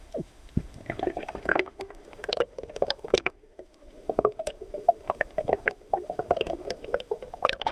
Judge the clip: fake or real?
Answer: fake